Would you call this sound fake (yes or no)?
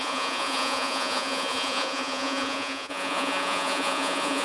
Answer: yes